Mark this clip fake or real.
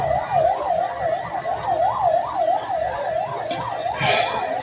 real